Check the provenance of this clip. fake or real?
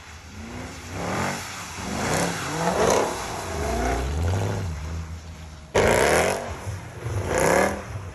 real